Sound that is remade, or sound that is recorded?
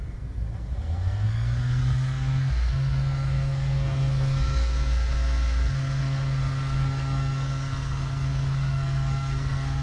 remade